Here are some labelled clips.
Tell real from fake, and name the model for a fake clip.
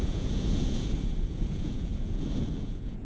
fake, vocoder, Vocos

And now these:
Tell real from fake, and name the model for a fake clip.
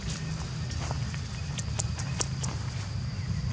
real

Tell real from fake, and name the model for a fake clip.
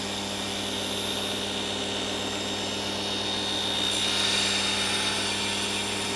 real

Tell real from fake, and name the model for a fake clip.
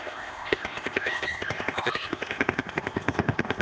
fake, codec, ZipCodec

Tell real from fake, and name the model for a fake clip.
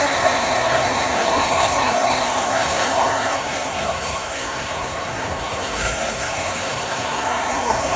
fake, codec, SNAC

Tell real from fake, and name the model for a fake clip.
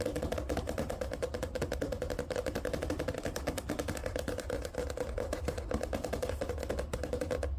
real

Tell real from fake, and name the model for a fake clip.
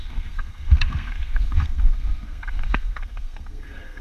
fake, codec, SNAC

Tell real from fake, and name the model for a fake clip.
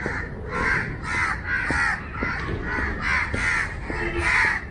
real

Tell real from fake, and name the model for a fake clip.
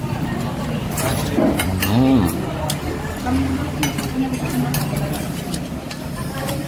real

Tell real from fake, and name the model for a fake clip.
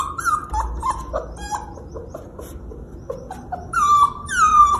real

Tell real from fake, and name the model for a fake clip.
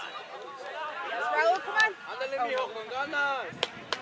real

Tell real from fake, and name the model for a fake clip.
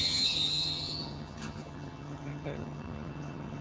fake, vocoder, HiFi-GAN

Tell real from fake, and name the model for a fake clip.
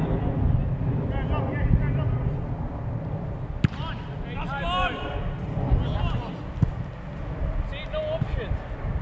real